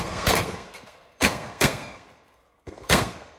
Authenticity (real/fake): fake